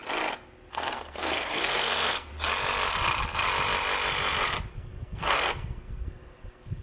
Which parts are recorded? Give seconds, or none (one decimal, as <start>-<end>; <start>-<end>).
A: 0.0-0.7; 2.3-4.7

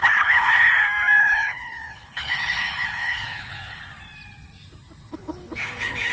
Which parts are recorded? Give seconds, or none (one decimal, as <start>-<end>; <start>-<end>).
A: 0.7-1.2; 3.8-5.1

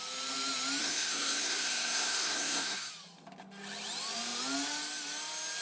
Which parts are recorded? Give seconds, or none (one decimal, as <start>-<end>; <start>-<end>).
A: 0.0-0.8; 2.9-5.6

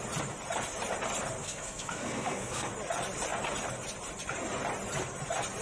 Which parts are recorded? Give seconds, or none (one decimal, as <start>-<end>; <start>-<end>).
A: 0.0-1.4; 2.7-5.6

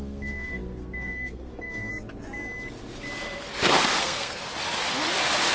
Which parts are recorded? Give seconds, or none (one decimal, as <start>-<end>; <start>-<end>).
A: 1.9-4.0; 4.4-5.5

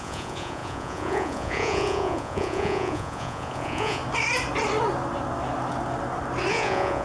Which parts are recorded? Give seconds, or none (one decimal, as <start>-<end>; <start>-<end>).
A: 4.0-6.5

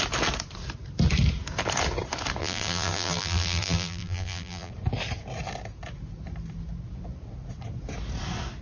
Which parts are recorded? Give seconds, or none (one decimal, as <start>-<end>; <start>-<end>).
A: 0.0-2.4; 4.7-8.6

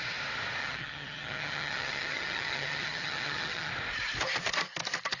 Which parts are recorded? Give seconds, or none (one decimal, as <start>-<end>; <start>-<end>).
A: 0.0-0.6; 3.7-5.2